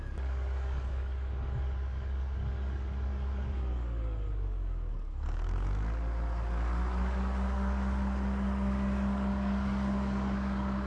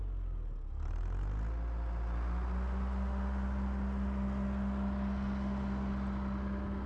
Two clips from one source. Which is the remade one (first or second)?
first